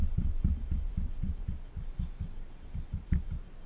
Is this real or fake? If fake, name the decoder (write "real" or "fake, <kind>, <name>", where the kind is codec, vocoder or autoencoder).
real